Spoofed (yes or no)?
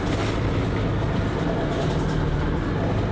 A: no